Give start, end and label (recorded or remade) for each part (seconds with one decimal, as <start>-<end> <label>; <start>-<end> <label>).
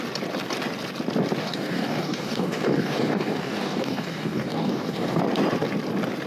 0.0-1.4 recorded; 1.4-5.2 remade; 5.2-6.3 recorded